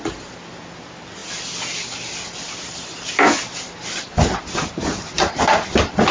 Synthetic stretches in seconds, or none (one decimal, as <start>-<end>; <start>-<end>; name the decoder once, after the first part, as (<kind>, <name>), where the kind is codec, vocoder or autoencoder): none